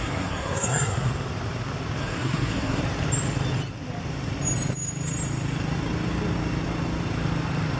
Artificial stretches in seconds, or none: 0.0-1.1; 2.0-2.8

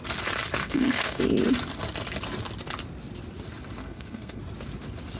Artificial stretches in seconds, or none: 0.6-1.2; 3.8-4.4

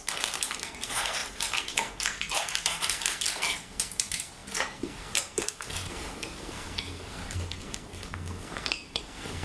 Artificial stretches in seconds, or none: 0.0-9.4

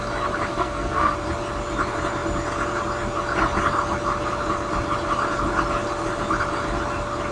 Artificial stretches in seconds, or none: 0.5-1.1

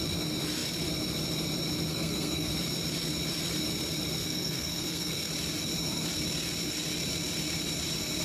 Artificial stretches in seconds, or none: 1.9-2.5; 4.2-5.3